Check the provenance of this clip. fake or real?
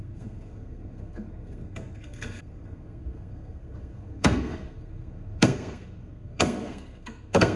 fake